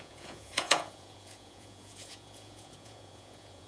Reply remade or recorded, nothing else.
remade